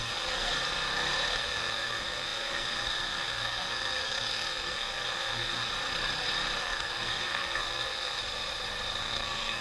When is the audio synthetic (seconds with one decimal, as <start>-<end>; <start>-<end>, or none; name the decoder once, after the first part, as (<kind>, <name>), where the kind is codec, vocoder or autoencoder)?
0.0-0.5 (codec, SNAC); 1.3-5.7; 6.6-8.2; 9.0-9.6